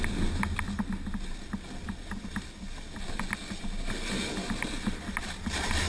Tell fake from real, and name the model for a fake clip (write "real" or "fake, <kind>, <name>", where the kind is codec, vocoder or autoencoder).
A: real